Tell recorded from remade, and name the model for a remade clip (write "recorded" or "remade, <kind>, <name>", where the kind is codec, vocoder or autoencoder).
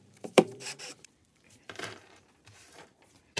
remade, vocoder, BigVGAN v2